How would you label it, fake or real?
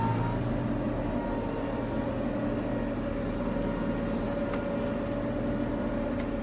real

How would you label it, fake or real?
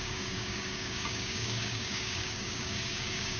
fake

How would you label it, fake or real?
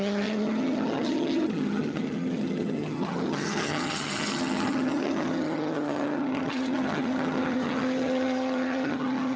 fake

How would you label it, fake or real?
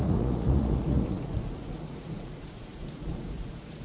fake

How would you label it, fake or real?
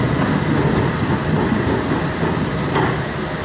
real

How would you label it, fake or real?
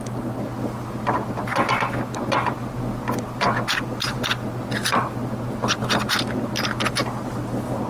real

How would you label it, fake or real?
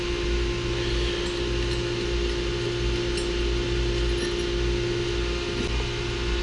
real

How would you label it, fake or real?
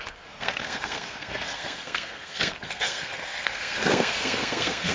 fake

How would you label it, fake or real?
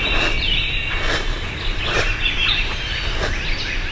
real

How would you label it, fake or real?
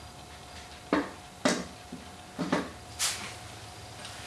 real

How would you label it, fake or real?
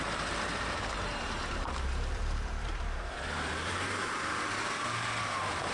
fake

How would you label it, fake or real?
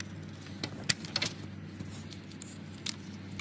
real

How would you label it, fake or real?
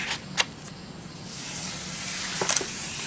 real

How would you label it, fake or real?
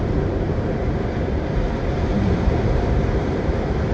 fake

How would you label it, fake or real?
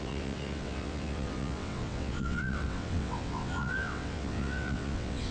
fake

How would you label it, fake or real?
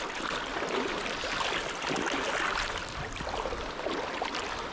real